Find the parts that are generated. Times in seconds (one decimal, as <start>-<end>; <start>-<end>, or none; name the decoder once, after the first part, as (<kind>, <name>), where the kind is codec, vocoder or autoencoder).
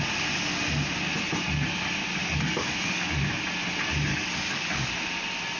2.2-3.2 (codec, DAC); 4.1-4.9